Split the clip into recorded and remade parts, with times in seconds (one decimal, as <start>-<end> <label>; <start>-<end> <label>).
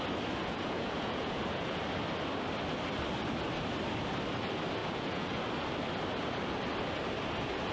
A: 0.0-0.4 recorded; 0.4-1.8 remade; 1.8-4.8 recorded; 4.8-5.4 remade; 5.4-7.7 recorded